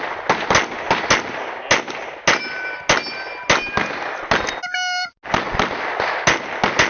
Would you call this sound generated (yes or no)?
no